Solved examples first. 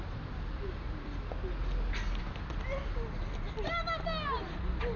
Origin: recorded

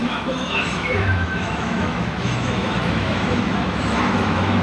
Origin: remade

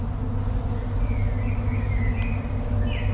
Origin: recorded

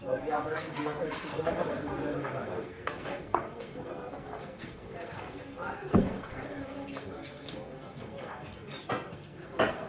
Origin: remade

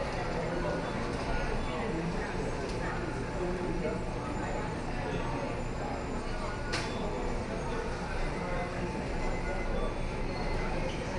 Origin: recorded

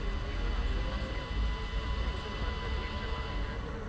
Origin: recorded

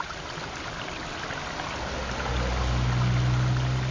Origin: recorded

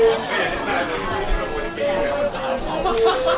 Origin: recorded